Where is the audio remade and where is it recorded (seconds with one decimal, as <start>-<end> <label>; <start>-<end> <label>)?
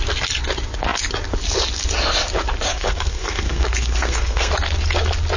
0.0-2.7 recorded; 2.7-4.5 remade; 4.5-5.4 recorded